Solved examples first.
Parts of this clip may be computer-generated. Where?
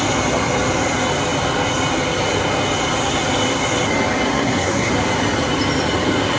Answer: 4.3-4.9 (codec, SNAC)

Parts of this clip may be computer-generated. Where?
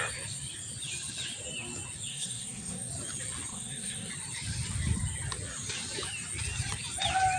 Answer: 2.1-2.9 (codec, SNAC); 3.5-4.1